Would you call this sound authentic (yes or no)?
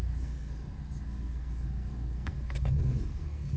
no